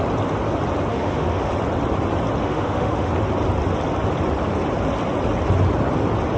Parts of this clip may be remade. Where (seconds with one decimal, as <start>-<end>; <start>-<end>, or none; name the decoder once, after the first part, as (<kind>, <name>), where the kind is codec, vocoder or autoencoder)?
0.9-1.5 (autoencoder, DAC-VAE); 2.4-3.1